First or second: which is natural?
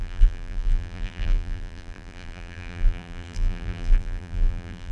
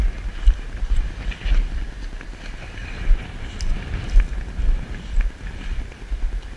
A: second